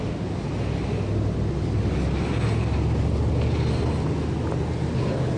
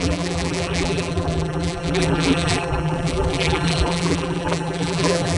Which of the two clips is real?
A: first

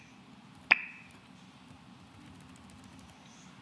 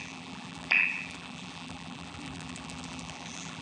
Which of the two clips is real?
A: first